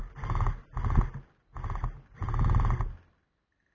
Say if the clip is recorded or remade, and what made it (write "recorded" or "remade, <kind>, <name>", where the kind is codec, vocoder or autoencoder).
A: recorded